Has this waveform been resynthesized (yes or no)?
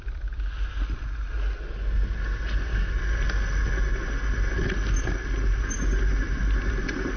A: no